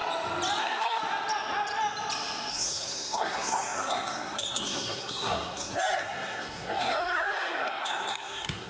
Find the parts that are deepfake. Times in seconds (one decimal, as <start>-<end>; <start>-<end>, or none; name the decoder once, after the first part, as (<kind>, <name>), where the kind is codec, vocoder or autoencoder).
0.6-1.0 (codec, SNAC); 2.5-8.7